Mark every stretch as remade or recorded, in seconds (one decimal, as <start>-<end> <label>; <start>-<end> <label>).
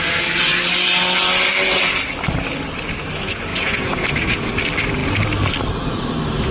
0.0-3.5 recorded; 3.5-4.5 remade; 4.5-6.5 recorded